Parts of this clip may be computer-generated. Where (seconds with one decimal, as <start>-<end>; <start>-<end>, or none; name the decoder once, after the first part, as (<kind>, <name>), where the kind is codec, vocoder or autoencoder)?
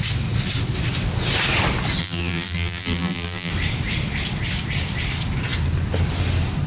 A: 2.0-3.5 (vocoder, BigVGAN v2)